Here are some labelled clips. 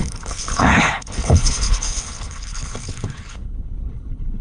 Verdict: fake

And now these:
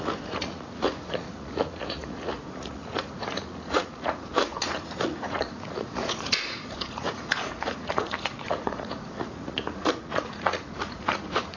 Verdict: fake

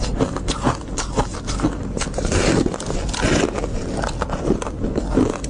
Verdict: real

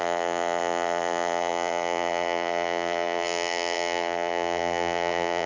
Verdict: fake